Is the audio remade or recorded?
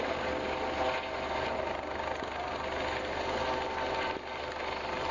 recorded